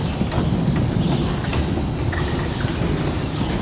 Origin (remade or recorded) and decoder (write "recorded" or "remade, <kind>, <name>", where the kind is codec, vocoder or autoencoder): recorded